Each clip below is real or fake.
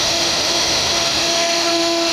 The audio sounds fake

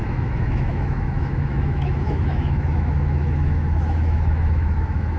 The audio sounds fake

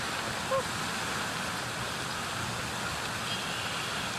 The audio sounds real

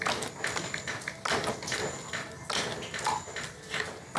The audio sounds real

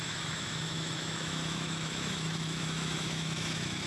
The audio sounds fake